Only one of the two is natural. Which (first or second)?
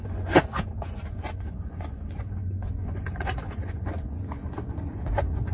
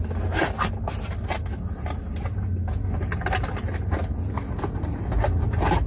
second